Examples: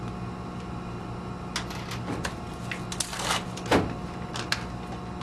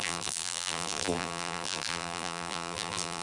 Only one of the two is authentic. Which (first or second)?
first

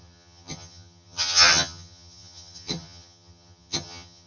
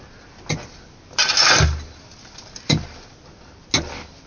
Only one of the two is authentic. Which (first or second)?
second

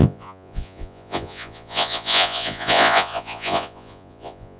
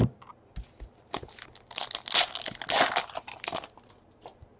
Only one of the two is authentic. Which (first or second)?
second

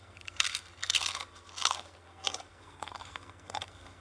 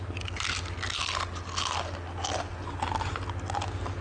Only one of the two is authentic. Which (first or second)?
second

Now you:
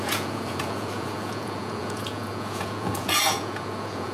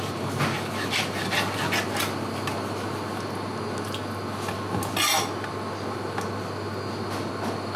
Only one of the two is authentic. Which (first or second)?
second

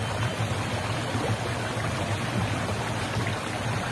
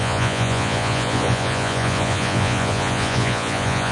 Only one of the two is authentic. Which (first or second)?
first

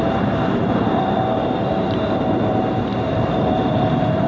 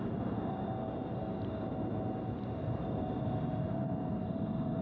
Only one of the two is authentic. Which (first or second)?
second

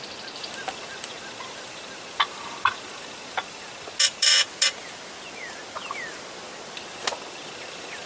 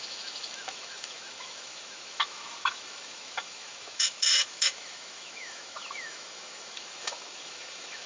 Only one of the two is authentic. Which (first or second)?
first